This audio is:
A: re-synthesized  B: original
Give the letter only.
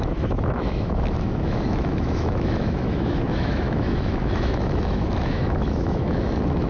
A